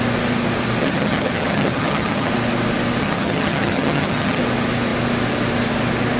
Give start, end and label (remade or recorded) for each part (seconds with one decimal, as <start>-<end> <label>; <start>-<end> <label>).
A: 0.0-0.8 recorded; 0.8-2.3 remade; 2.3-3.0 recorded; 3.0-4.4 remade; 4.4-6.2 recorded